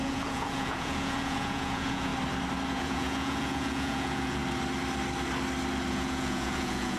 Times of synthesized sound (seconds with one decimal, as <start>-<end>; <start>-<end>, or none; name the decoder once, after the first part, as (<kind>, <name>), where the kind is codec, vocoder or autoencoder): 0.0-2.1 (vocoder, Vocos); 2.7-4.4; 5.9-7.0